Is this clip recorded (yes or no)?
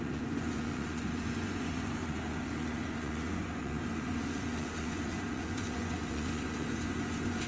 no